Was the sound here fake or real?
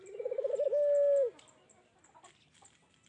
real